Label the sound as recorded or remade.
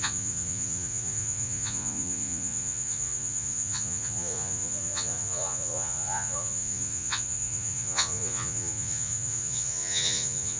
remade